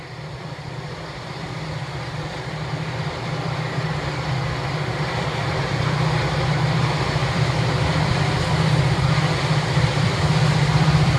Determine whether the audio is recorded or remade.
remade